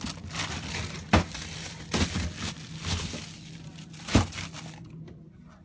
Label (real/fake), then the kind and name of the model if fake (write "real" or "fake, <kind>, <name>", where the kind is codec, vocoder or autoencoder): real